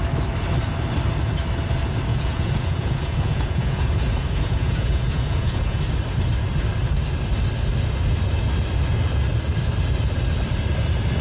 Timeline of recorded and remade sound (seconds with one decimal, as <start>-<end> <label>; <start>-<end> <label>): 0.0-2.1 recorded; 2.1-5.8 remade; 5.8-11.2 recorded

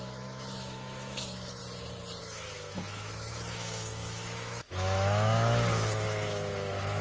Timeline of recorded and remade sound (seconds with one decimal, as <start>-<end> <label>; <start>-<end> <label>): 0.0-1.6 remade; 1.6-2.2 recorded; 2.2-7.0 remade

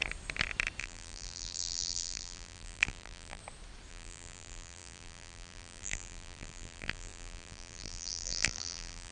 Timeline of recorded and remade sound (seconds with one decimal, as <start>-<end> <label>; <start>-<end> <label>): 0.0-0.8 recorded; 0.8-3.4 remade; 3.4-3.9 recorded; 3.9-9.1 remade

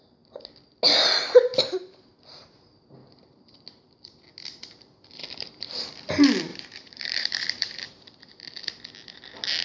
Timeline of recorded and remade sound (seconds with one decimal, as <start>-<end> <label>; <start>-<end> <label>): 0.0-1.5 recorded; 1.5-3.6 remade; 3.6-5.2 recorded; 5.2-6.1 remade; 6.1-6.5 recorded; 6.5-8.3 remade; 8.3-9.6 recorded

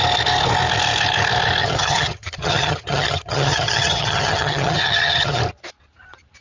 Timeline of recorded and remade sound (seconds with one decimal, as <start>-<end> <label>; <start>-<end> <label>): 0.0-1.6 recorded; 1.6-5.4 remade; 5.4-6.4 recorded

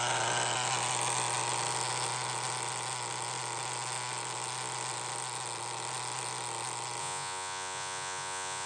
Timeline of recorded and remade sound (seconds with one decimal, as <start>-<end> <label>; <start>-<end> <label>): 0.0-7.0 recorded; 7.0-8.7 remade

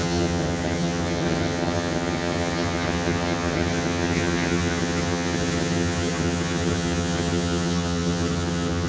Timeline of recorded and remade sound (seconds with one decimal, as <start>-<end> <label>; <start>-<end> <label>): 0.0-8.9 remade

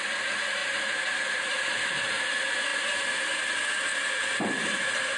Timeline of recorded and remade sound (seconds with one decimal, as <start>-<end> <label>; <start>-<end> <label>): 0.0-5.2 remade